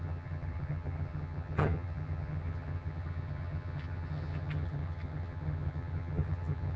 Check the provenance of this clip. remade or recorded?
remade